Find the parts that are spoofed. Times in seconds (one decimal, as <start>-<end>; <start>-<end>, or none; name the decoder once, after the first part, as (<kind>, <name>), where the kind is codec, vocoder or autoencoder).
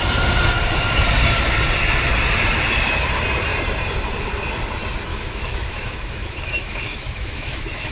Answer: 5.1-7.9 (autoencoder, DAC-VAE)